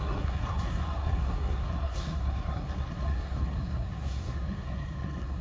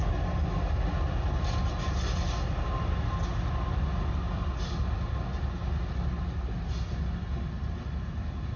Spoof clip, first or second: first